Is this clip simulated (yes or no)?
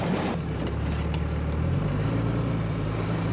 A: yes